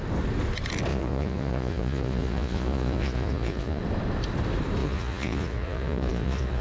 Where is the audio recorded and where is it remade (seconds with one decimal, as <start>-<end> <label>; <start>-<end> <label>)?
0.0-0.9 recorded; 0.9-3.8 remade; 3.8-4.8 recorded; 4.8-6.6 remade